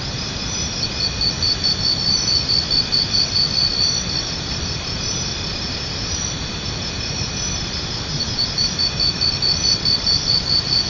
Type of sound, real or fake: real